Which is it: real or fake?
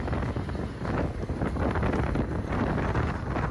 real